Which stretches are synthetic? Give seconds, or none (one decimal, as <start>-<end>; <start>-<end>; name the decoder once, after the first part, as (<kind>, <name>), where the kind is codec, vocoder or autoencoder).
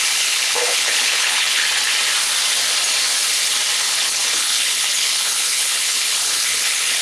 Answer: 0.0-1.6 (codec, HILCodec); 3.8-7.0